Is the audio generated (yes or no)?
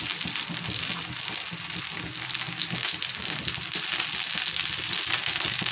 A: no